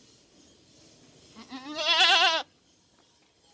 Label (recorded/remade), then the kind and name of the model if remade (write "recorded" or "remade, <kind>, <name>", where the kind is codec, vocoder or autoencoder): recorded